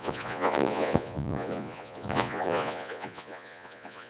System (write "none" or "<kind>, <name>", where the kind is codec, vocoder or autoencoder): vocoder, Vocos